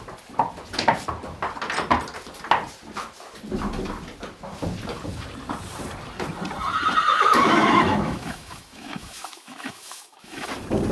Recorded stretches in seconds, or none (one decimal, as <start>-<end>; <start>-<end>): 0.0-7.1; 10.5-10.9